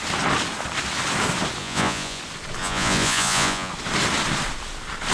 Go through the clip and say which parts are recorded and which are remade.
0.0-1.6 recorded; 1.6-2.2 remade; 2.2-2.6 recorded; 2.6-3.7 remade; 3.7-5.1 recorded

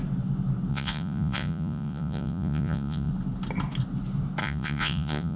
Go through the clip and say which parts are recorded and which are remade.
0.0-0.7 recorded; 0.7-3.1 remade; 3.1-4.4 recorded; 4.4-5.4 remade